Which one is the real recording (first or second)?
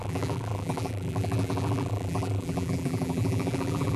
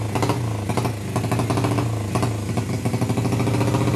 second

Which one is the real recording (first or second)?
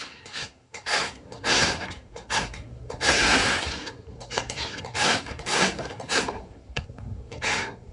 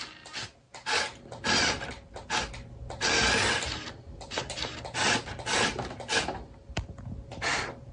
second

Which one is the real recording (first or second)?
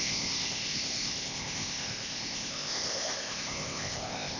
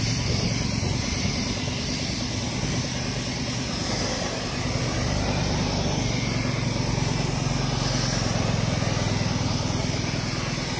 second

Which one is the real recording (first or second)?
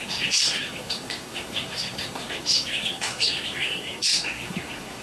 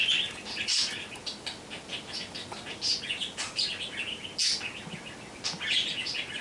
second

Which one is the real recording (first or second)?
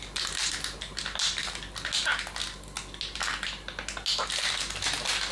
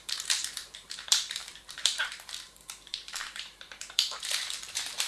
first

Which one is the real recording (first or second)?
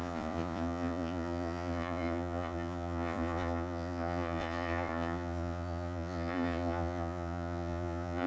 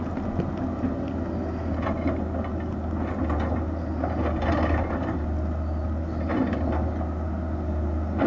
second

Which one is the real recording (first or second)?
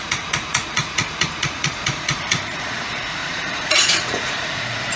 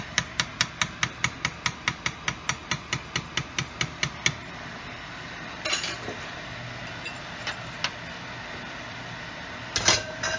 second